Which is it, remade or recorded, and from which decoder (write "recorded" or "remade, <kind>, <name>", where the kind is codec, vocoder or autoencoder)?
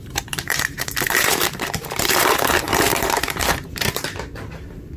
remade, vocoder, BigVGAN v2